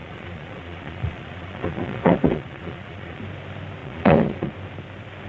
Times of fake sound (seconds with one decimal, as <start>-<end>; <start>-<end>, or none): 0.0-3.2; 3.8-4.5